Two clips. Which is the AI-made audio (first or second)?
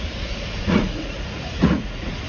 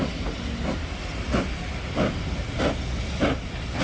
first